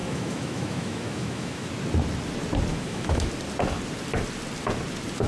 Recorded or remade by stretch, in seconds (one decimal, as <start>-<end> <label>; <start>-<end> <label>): 0.0-1.7 remade; 1.7-2.7 recorded; 2.7-3.3 remade; 3.3-5.3 recorded